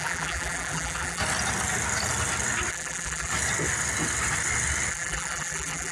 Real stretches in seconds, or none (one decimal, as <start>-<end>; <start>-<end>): 1.2-2.7; 3.3-4.9